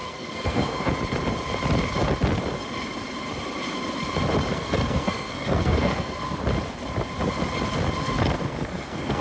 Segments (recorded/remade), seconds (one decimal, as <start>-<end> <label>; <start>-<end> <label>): 0.0-0.9 remade; 0.9-4.5 recorded; 4.5-6.4 remade; 6.4-8.0 recorded; 8.0-9.2 remade